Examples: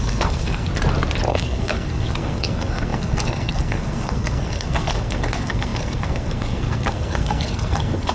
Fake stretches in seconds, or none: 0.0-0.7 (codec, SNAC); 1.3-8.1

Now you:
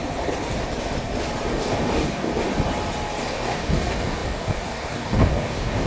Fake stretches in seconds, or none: 1.5-2.3 (codec, DAC); 3.3-5.9

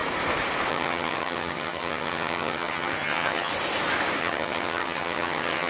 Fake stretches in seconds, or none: 0.7-3.5 (vocoder, HiFi-GAN); 4.2-5.7

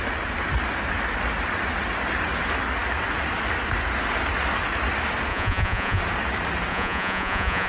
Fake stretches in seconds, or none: 5.3-6.0 (vocoder, Vocos); 6.7-7.7

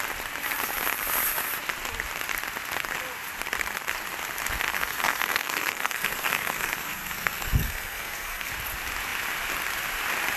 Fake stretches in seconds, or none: 4.7-8.5 (codec, SNAC)

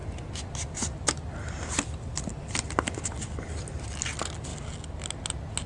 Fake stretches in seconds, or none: none

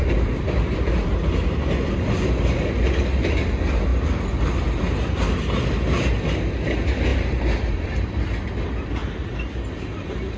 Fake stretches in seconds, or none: 0.0-1.0 (vocoder, BigVGAN v2); 7.1-8.1; 9.0-10.4

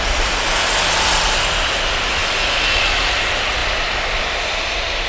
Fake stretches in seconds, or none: none